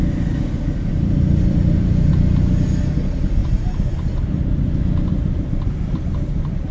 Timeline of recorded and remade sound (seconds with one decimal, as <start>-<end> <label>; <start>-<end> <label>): 0.0-0.9 recorded; 0.9-2.1 remade; 2.1-3.4 recorded; 3.4-4.2 remade; 4.2-6.7 recorded